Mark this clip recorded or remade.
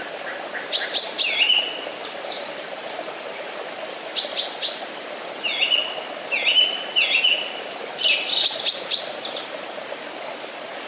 recorded